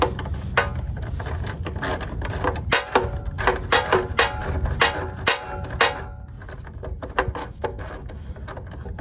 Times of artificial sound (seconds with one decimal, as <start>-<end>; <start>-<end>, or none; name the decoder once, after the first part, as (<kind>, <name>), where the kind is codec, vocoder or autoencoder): 7.4-8.3 (autoencoder, DAC-VAE)